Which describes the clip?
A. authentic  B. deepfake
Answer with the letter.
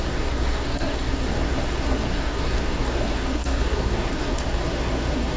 B